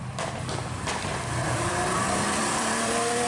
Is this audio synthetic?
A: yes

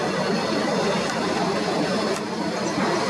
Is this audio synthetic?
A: no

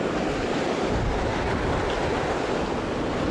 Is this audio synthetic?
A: no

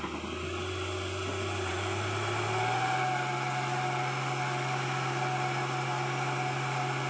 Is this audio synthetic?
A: no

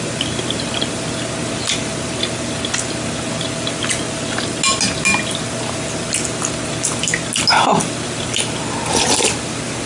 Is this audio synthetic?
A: no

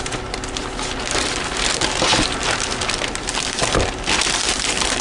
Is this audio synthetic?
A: yes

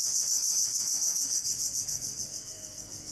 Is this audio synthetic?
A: yes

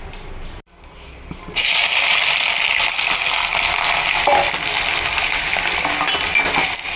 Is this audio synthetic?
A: no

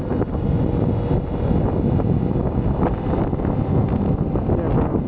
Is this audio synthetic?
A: no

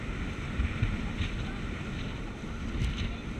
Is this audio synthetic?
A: no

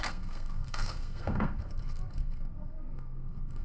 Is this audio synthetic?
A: yes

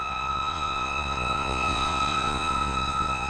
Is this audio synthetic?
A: yes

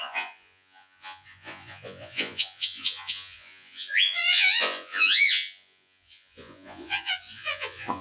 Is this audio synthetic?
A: yes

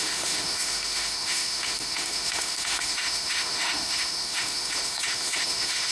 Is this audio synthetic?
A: yes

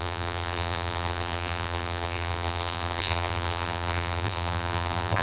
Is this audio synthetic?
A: yes